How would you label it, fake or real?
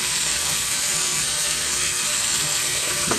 fake